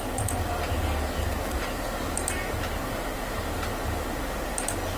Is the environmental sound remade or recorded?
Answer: recorded